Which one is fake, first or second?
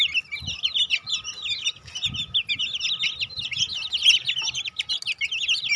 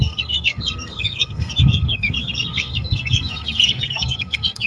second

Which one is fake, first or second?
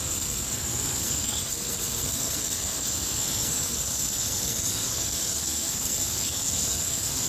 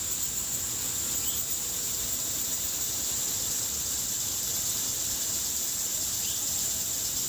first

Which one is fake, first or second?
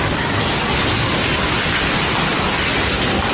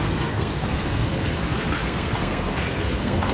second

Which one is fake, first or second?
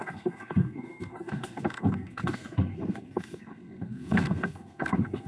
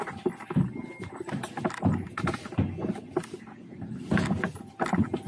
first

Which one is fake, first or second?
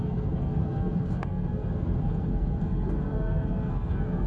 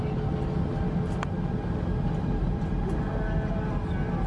first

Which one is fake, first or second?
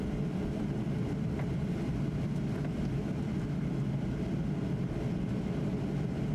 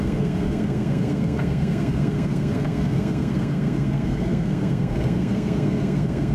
second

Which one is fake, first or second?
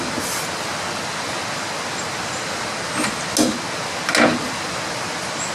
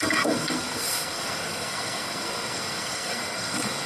second